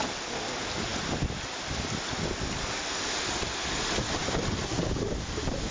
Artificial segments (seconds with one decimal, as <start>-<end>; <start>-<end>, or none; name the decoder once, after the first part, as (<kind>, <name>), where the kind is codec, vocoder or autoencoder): none